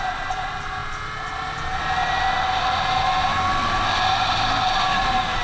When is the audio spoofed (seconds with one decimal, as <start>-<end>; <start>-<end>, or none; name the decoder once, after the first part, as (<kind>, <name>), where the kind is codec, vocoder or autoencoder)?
0.0-0.8 (vocoder, BigVGAN v2); 3.6-5.4